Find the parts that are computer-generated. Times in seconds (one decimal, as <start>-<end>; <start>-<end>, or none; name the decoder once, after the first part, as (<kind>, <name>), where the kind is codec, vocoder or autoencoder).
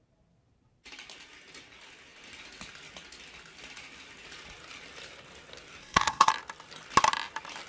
5.8-6.3 (codec, SNAC)